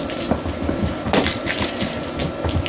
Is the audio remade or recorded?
recorded